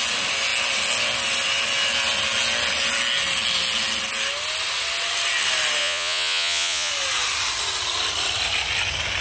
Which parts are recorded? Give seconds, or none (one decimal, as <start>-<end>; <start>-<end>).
0.0-5.8; 6.9-9.2